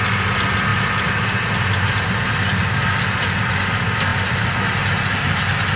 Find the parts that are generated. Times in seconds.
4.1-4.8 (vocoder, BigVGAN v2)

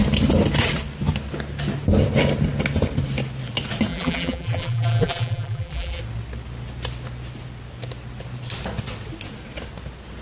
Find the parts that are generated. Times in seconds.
3.9-6.0 (vocoder, BigVGAN v2)